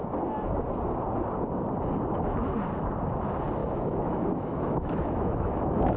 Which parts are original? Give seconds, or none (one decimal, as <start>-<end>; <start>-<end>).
0.0-3.6